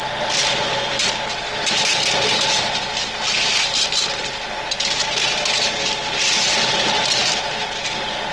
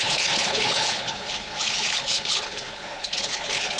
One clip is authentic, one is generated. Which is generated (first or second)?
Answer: second